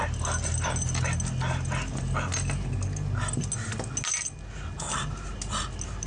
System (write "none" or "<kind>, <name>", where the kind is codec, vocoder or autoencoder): none